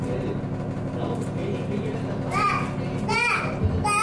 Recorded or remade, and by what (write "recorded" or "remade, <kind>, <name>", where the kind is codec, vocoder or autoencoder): recorded